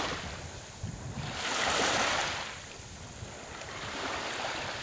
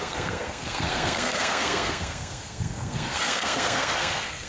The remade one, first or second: second